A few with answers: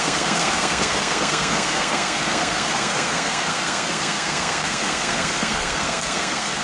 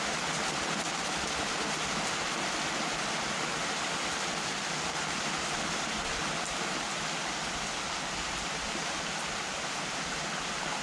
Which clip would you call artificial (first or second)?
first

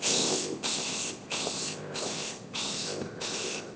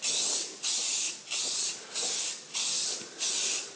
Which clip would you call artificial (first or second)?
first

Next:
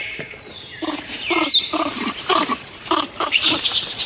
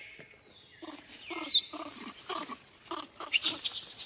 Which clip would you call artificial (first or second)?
first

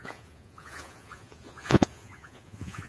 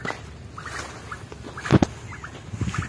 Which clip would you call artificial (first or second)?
first